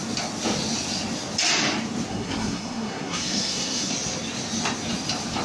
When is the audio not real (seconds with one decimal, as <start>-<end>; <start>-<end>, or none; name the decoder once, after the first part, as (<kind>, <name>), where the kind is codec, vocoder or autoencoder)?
2.1-3.9 (codec, SNAC)